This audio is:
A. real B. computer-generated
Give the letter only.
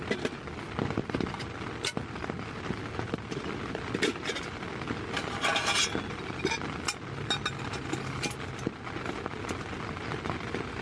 A